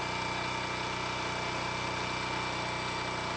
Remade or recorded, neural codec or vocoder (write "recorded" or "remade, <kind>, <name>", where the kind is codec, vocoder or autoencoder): recorded